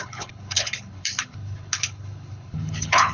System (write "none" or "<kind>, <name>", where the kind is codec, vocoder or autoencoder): codec, HILCodec